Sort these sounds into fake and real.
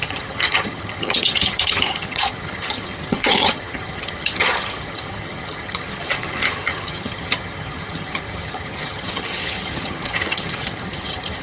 fake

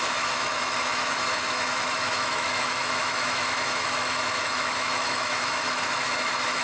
fake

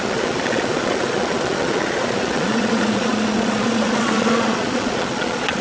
fake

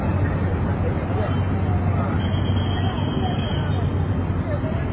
real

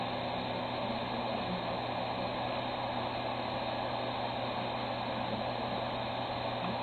real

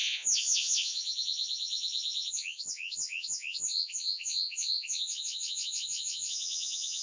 fake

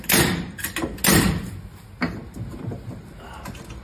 real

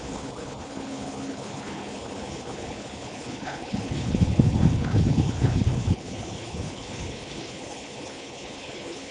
fake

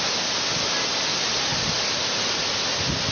real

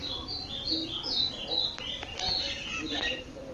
real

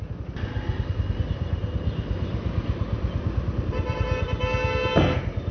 real